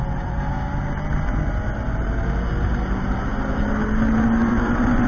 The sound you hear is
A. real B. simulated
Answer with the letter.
A